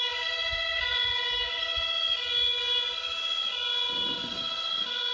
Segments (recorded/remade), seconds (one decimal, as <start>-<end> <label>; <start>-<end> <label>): 0.0-5.1 recorded